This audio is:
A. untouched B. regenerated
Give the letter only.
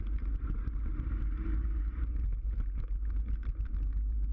A